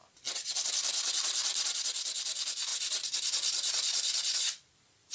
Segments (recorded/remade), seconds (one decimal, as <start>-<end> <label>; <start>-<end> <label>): 0.0-5.1 recorded